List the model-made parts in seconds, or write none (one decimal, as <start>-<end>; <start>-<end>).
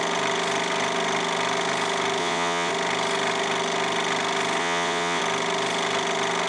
2.2-2.7; 4.6-5.2